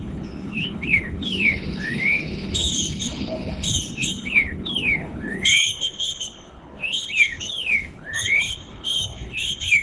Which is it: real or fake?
fake